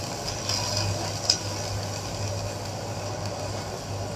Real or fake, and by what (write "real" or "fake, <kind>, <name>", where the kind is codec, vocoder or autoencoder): real